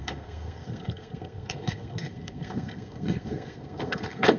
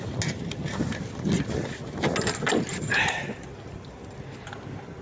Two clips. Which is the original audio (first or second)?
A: second